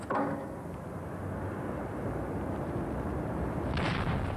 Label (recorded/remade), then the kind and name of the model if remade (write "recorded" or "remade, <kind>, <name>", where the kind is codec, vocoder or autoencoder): recorded